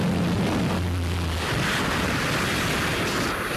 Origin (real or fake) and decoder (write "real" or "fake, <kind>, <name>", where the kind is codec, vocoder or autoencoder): real